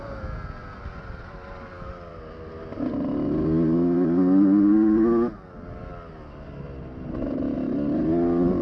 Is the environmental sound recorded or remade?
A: recorded